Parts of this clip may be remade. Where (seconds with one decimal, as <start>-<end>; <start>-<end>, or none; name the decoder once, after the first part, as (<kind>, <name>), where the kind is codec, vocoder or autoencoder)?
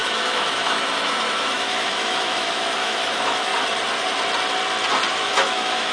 0.0-3.5 (autoencoder, DAC-VAE); 5.1-5.9